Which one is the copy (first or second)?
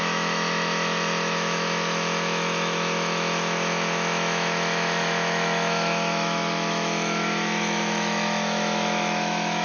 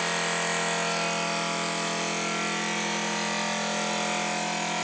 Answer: first